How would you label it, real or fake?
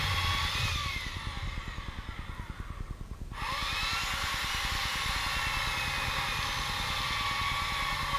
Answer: real